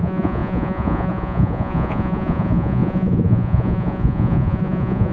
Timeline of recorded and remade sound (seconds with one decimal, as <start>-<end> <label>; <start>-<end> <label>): 0.0-5.1 remade